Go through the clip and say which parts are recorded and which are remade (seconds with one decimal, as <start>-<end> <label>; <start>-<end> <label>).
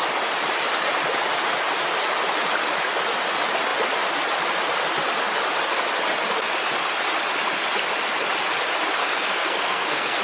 0.0-9.0 recorded; 9.0-10.2 remade